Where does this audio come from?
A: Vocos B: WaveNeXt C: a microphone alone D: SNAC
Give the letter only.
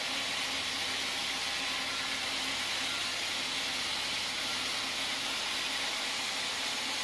C